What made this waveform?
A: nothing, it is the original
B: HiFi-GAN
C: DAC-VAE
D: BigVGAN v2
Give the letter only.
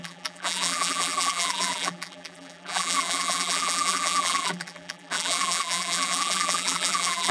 D